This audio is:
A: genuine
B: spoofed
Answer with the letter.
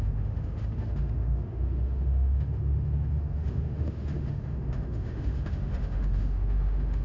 B